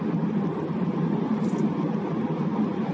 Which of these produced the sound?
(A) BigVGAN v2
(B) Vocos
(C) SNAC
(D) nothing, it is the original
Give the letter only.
D